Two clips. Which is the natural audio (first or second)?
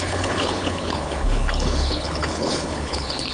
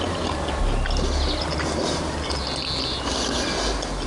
second